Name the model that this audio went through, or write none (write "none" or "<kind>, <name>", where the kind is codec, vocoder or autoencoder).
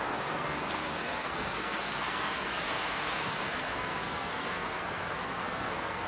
codec, SNAC